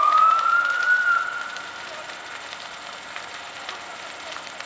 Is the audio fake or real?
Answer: real